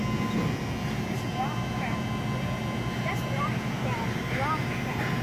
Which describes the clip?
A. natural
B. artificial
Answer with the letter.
A